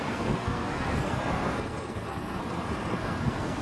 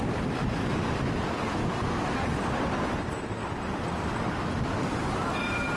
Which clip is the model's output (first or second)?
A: first